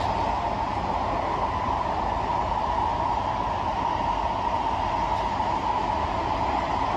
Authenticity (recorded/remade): recorded